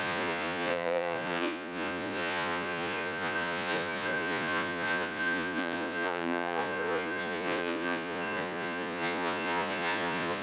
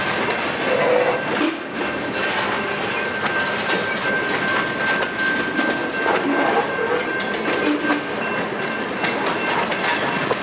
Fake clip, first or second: first